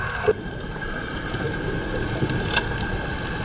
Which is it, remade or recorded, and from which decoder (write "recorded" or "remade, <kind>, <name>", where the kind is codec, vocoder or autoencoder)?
recorded